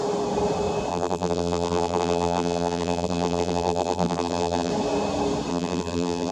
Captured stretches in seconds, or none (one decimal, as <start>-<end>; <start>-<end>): 0.0-0.9; 4.7-5.5